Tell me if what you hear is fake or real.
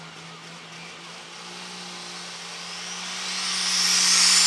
real